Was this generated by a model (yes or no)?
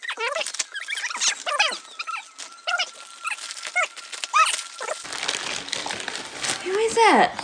no